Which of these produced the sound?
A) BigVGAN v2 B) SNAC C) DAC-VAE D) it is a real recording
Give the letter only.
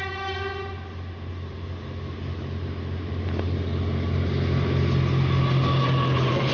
D